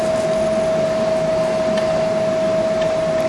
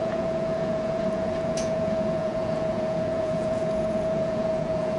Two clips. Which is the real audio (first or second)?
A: first